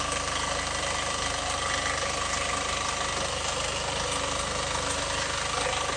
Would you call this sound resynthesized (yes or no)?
no